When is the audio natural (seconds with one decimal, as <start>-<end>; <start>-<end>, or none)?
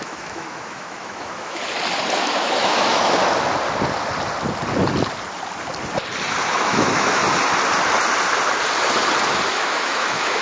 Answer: 1.6-2.2; 3.2-6.5; 7.2-9.5